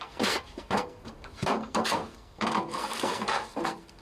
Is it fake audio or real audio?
fake